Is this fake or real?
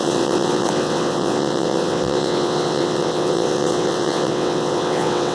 fake